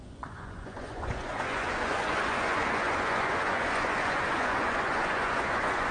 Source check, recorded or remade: remade